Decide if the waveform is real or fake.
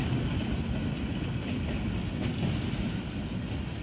real